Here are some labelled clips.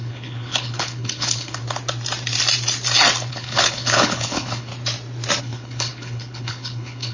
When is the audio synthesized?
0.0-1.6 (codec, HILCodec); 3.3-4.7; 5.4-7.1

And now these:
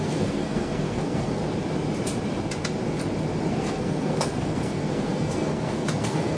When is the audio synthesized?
0.0-1.4 (codec, SNAC); 3.5-6.4

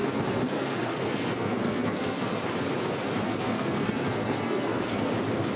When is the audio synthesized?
0.0-2.4 (codec, SNAC); 3.2-5.1

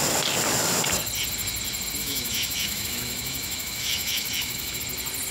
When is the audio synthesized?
2.0-4.8 (autoencoder, DAC-VAE)

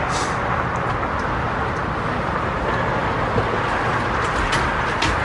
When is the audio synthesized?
none

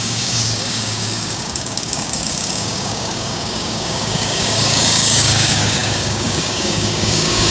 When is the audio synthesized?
0.0-7.5 (codec, DAC)